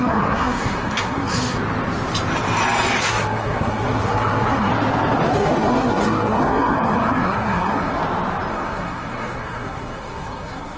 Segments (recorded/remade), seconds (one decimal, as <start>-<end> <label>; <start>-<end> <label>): 0.0-1.6 remade; 1.6-3.0 recorded; 3.0-4.7 remade; 4.7-5.3 recorded; 5.3-8.0 remade; 8.0-8.5 recorded; 8.5-10.8 remade